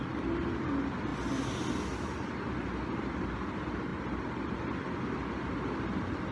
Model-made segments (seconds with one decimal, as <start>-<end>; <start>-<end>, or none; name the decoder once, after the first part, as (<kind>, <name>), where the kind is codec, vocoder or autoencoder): none